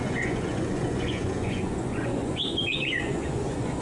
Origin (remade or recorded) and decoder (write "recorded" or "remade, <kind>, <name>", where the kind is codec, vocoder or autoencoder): remade, vocoder, Vocos